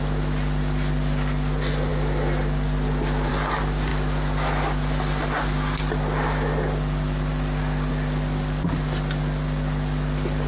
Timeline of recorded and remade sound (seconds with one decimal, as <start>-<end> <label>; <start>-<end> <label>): 0.0-10.5 recorded